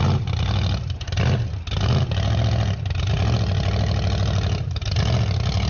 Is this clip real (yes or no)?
yes